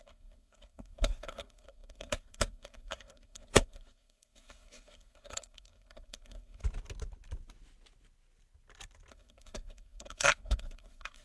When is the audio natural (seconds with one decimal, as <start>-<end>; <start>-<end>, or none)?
6.6-9.1